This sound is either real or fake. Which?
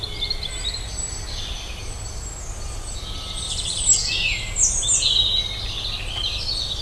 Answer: real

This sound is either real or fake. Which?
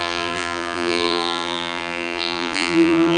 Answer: fake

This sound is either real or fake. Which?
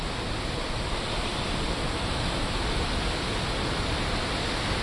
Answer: real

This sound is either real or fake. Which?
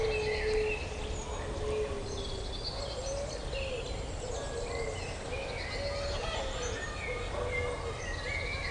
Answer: real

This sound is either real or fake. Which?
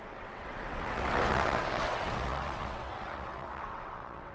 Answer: fake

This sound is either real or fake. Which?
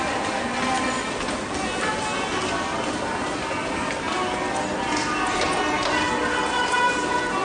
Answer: real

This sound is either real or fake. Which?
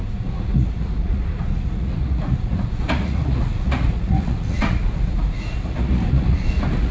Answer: fake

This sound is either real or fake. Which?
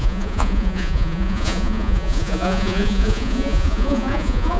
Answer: fake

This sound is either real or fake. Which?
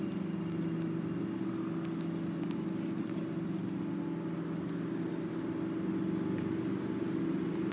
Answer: real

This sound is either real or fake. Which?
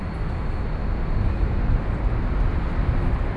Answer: real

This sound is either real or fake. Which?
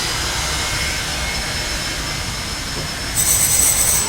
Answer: real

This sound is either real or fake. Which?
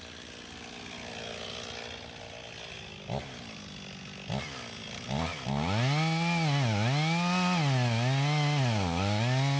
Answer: real